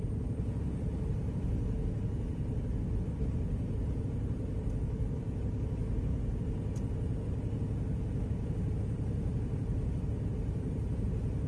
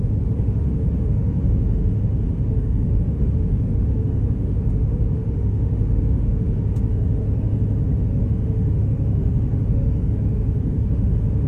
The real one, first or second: first